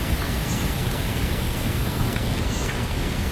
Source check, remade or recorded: remade